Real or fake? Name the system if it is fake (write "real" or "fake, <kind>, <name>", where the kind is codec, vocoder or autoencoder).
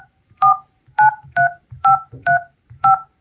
fake, vocoder, BigVGAN v2